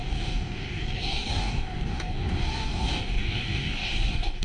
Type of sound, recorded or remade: remade